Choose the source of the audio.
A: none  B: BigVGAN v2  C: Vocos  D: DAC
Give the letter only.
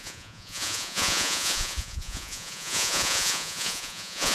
C